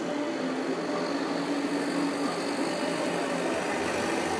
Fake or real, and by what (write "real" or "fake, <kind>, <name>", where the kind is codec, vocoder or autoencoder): real